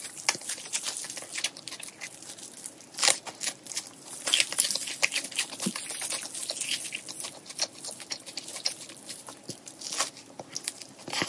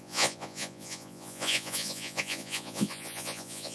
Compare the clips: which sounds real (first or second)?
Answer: first